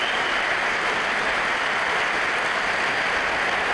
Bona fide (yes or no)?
no